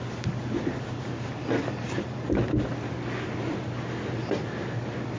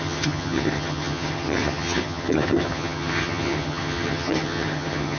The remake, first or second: second